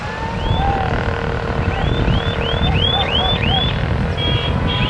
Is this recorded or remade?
recorded